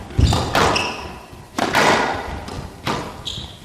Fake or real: real